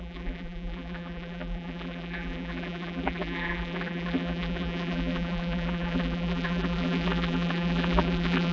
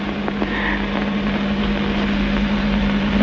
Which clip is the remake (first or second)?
first